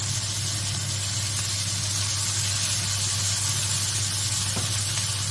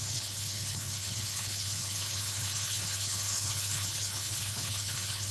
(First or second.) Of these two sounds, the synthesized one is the second